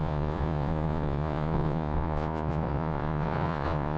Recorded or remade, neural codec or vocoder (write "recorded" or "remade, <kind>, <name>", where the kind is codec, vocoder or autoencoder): remade, vocoder, Vocos